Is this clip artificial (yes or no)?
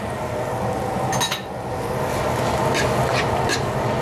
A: no